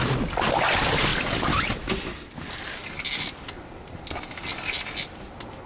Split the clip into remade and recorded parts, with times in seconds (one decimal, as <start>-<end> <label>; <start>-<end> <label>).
0.0-5.7 recorded

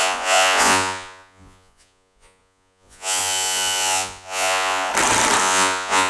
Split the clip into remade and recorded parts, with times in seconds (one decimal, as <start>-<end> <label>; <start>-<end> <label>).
0.0-4.9 remade; 4.9-5.4 recorded; 5.4-6.1 remade

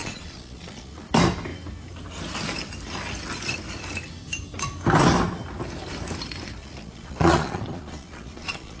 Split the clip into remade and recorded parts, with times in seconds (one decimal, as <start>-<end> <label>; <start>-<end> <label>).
0.0-1.1 remade; 1.1-6.6 recorded; 6.6-8.8 remade

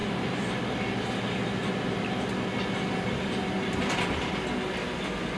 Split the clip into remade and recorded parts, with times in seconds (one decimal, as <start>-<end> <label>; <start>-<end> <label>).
0.0-5.4 recorded

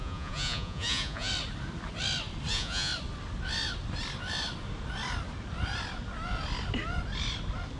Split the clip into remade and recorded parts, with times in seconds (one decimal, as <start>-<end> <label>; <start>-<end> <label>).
0.0-1.3 remade; 1.3-2.5 recorded; 2.5-2.9 remade; 2.9-7.8 recorded

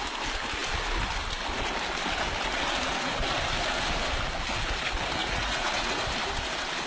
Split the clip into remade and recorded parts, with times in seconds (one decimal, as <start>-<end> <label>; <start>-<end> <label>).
0.0-5.2 recorded; 5.2-6.0 remade; 6.0-6.9 recorded

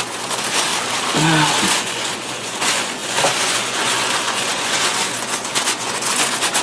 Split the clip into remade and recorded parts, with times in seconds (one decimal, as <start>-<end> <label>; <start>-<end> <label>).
0.0-0.7 remade; 0.7-1.6 recorded; 1.6-6.6 remade